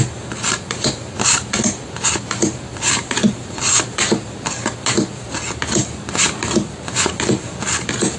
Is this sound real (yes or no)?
yes